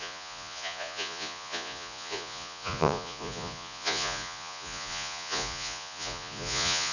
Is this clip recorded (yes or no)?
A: no